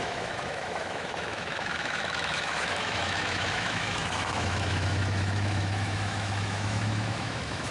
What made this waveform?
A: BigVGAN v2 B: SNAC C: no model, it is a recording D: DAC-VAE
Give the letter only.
D